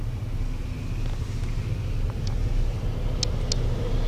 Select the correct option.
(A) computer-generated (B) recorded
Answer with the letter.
B